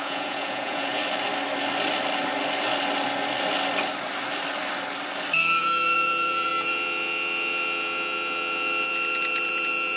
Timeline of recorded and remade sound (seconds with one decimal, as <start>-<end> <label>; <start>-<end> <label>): 0.0-1.0 remade; 1.0-5.6 recorded; 5.6-10.0 remade